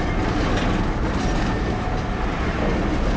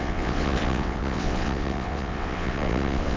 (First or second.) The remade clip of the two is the second